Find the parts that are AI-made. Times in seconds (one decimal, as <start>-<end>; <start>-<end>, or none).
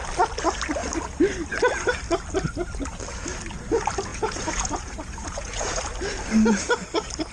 4.1-5.8